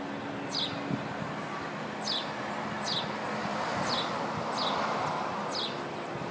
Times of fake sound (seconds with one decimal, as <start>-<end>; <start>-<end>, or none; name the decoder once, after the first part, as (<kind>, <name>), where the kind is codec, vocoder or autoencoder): none